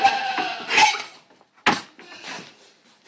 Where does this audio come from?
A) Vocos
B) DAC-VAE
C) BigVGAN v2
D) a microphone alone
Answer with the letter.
D